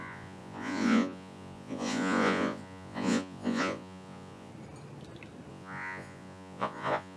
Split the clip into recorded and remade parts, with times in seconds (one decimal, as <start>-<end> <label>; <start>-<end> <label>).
0.0-4.5 remade; 4.5-5.5 recorded; 5.5-7.2 remade